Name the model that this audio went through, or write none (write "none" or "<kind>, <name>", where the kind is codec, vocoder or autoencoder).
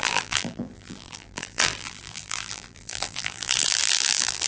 vocoder, BigVGAN v2